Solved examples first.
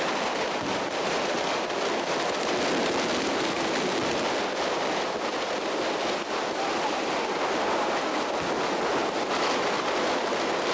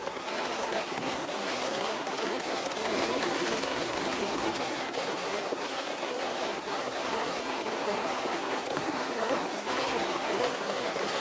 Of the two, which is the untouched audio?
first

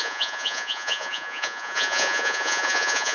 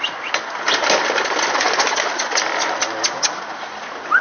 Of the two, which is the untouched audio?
second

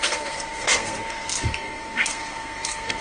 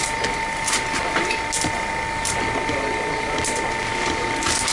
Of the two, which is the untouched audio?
second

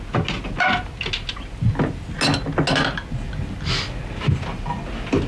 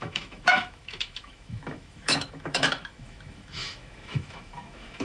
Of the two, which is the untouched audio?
first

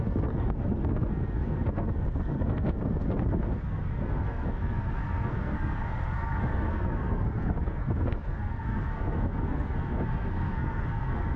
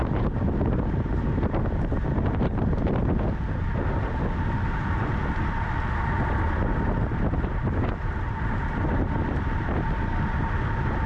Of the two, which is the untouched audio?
second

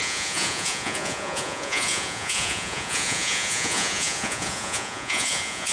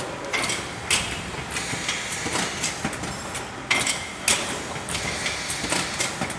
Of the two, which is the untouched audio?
second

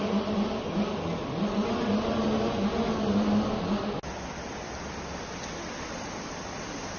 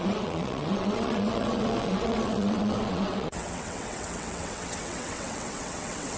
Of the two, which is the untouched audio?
first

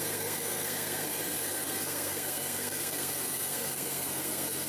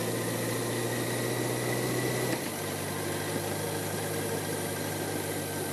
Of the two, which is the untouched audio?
second